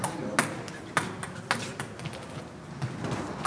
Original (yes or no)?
yes